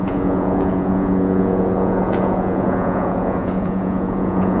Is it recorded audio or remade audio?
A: remade